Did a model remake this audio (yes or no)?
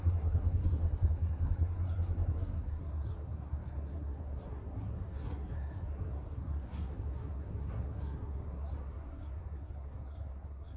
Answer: yes